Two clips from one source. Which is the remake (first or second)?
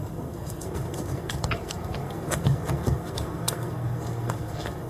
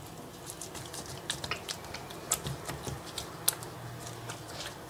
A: first